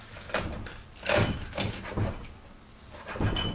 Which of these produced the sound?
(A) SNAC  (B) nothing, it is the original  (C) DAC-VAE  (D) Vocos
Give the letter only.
B